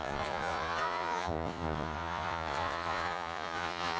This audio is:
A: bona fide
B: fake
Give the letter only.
B